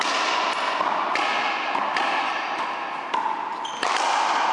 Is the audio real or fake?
real